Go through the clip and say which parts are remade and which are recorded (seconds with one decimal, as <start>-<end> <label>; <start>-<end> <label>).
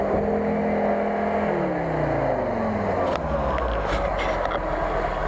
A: 0.0-5.3 recorded